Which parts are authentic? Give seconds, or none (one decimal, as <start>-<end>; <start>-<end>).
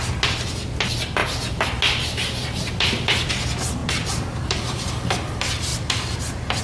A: 0.0-3.8; 4.9-5.7